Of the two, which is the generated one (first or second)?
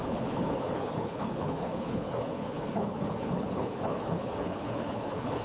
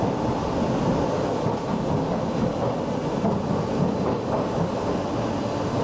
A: first